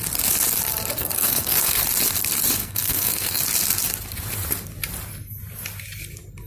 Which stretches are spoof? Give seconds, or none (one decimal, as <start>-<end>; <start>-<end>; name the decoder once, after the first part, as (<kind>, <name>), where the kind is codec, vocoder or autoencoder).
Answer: 1.0-1.8 (codec, SNAC); 2.6-3.4